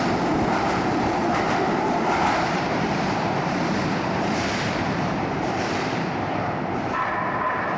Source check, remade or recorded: remade